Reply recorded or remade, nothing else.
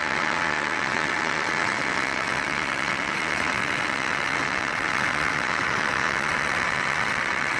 remade